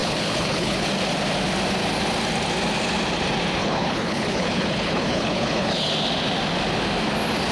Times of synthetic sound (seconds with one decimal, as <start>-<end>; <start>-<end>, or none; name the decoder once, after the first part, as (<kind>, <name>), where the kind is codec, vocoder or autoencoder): 0.0-0.9 (codec, HILCodec); 3.6-5.9